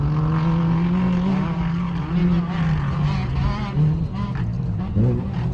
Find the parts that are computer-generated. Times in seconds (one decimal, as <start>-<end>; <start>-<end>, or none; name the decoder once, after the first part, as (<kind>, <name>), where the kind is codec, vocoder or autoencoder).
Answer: none